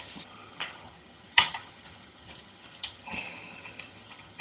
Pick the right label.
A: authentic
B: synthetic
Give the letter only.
B